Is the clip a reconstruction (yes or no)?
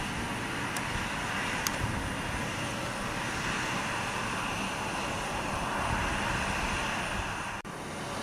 no